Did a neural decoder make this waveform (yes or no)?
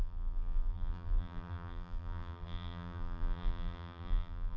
yes